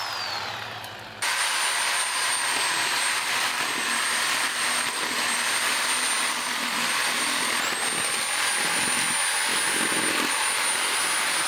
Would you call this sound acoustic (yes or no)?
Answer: yes